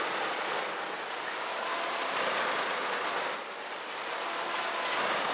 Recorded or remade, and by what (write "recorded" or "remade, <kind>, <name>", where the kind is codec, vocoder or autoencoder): recorded